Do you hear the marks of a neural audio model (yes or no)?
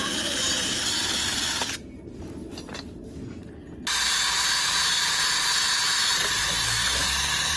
no